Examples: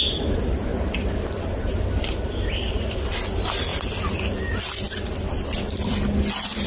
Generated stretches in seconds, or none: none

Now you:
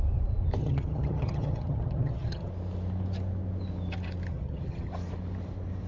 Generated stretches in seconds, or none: 0.6-2.5; 4.3-4.9

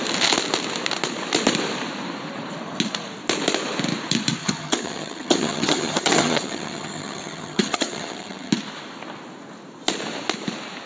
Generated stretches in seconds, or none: 4.4-8.5

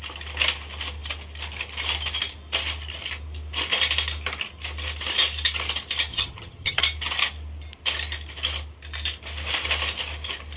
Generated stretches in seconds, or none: 6.1-6.8

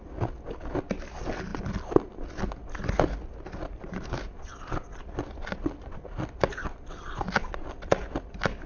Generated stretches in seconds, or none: none

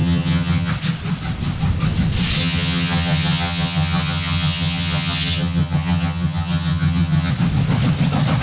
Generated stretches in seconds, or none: 0.0-0.7; 2.4-7.3

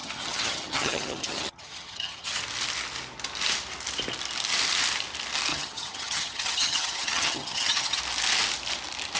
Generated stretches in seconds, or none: 0.0-2.4; 5.5-8.0

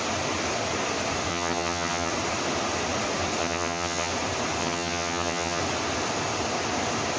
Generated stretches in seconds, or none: 1.3-2.1; 3.4-4.1; 4.6-5.6